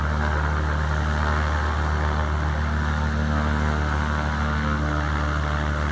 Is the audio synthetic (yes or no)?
no